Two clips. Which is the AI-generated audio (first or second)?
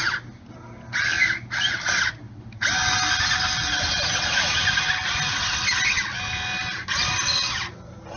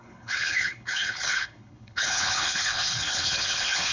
second